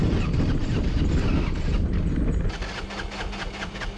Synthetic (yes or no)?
no